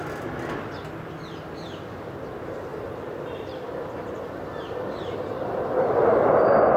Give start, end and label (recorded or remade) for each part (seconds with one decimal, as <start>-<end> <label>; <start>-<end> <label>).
0.0-2.7 recorded; 2.7-6.8 remade